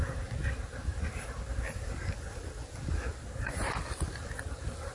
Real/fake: real